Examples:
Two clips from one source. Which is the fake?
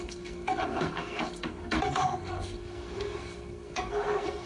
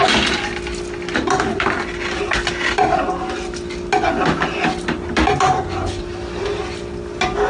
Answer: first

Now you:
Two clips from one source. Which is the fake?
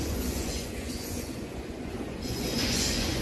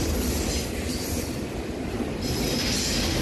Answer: first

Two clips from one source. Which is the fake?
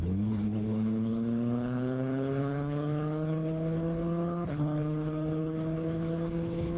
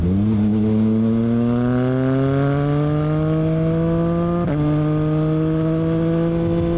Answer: first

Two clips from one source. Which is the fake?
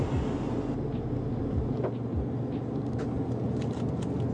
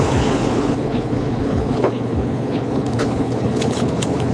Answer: second